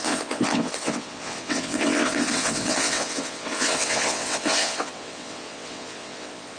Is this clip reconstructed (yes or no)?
yes